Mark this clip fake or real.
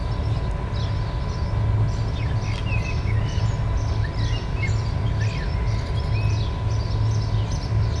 real